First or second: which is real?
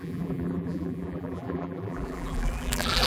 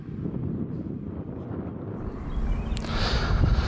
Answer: second